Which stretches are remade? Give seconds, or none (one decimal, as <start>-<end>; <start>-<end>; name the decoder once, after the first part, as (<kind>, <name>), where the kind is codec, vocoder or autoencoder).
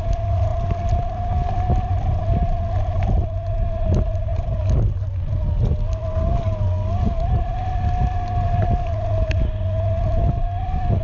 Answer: none